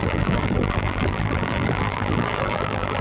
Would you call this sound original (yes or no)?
no